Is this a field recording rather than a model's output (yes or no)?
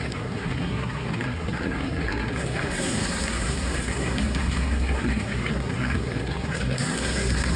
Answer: no